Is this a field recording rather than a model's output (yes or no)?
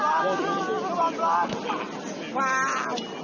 yes